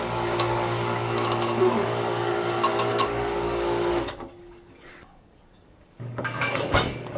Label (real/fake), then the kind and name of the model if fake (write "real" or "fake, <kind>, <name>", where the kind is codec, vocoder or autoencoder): fake, codec, DAC